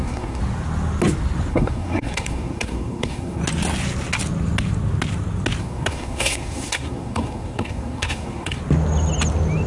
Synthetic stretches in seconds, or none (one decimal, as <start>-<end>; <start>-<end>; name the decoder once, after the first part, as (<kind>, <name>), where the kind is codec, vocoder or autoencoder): 0.0-0.4 (codec, SNAC); 1.5-3.4; 5.6-8.6